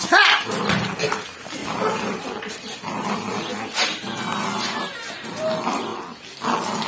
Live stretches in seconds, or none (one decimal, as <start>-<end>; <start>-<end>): 0.0-6.9